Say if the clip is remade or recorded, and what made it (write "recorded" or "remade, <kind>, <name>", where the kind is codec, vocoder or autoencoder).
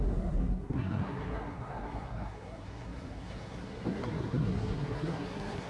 remade, codec, SNAC